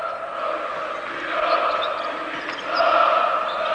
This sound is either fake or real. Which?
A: real